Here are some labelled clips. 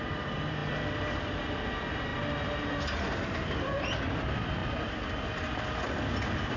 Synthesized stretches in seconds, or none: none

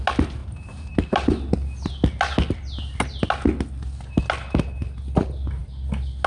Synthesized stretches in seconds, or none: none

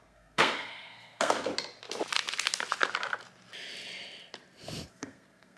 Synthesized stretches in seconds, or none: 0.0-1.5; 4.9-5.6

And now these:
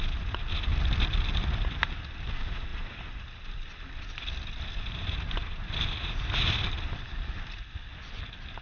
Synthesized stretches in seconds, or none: 2.7-7.9